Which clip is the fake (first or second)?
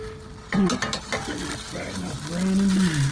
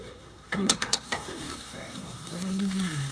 second